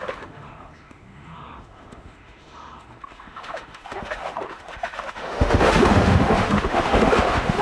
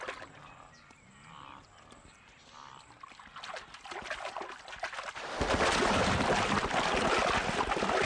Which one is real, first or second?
second